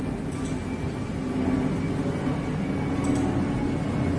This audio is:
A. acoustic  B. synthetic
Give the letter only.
A